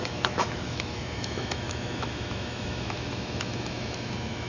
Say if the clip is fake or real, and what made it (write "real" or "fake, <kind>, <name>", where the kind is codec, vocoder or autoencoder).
fake, autoencoder, DAC-VAE